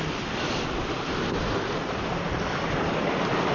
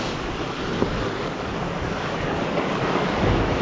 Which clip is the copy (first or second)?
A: second